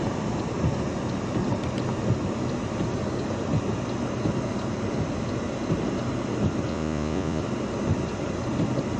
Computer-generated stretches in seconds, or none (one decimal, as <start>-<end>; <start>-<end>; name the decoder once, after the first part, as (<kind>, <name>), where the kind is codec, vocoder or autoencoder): 6.7-7.4 (vocoder, Vocos)